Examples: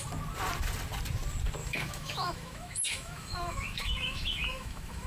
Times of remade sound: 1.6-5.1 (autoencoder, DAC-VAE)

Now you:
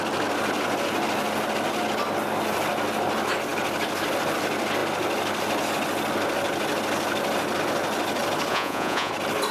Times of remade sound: 8.5-9.1 (vocoder, Vocos)

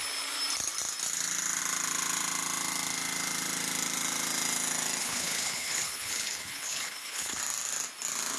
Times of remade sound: 5.0-7.4 (codec, HILCodec)

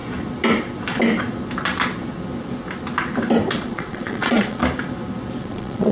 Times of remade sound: 3.5-4.6 (vocoder, Vocos); 5.4-5.9